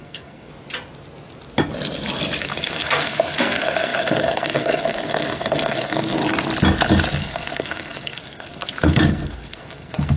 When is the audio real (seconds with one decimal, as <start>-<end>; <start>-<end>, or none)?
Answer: 0.5-2.4; 6.2-7.2